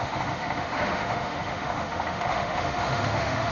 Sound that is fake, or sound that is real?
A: fake